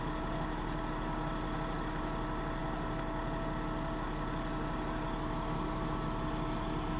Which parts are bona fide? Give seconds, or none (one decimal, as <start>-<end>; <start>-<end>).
0.0-7.0